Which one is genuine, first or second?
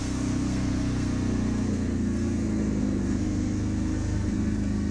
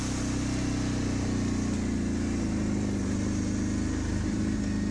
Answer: second